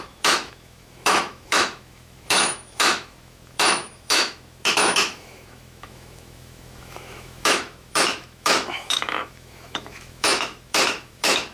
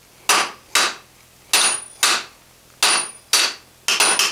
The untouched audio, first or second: second